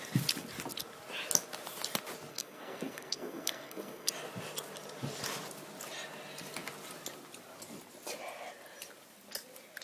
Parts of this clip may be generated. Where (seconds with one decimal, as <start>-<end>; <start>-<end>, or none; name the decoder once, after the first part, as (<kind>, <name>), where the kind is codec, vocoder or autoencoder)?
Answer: 2.3-4.1 (codec, SNAC)